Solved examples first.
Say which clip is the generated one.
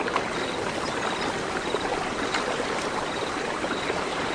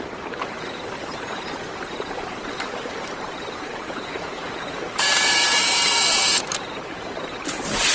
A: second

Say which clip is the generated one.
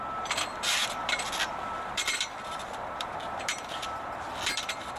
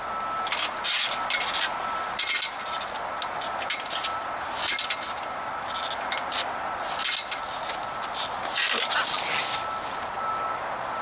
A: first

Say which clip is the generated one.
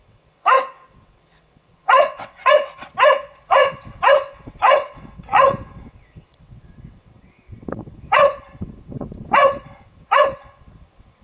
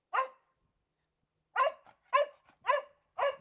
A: first